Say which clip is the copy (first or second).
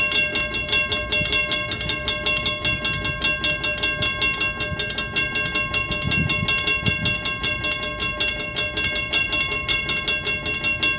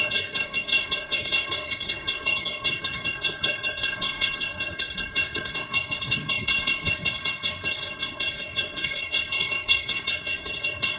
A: second